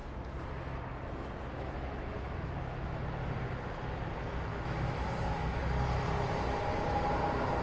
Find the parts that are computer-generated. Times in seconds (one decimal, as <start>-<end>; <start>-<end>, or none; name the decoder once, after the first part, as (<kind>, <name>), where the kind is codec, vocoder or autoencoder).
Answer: 1.5-3.0 (autoencoder, DAC-VAE); 4.5-5.6